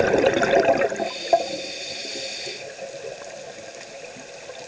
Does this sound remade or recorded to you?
recorded